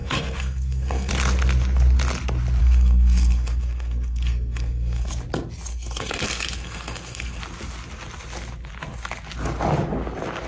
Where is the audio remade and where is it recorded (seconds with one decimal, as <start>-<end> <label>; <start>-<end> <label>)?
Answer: 0.0-1.1 remade; 1.1-2.6 recorded; 2.6-5.1 remade; 5.1-5.7 recorded; 5.7-7.4 remade; 7.4-10.5 recorded